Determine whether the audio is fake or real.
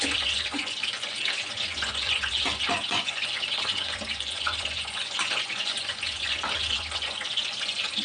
fake